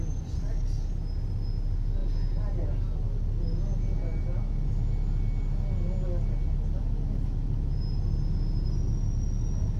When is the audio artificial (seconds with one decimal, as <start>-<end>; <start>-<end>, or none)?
none